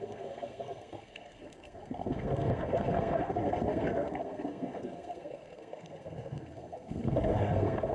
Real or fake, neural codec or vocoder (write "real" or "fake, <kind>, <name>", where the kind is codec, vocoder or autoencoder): fake, codec, SNAC